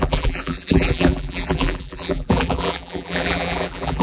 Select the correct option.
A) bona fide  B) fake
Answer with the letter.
B